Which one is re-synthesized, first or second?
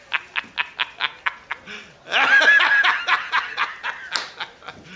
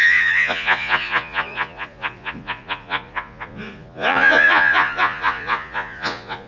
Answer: second